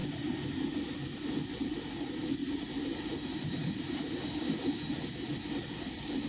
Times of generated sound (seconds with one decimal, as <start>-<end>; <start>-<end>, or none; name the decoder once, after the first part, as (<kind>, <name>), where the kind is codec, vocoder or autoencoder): 2.4-5.1 (vocoder, BigVGAN v2)